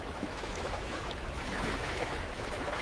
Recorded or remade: remade